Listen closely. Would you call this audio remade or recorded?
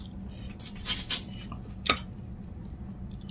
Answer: recorded